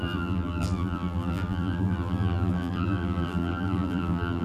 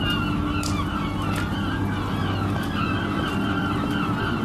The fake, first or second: first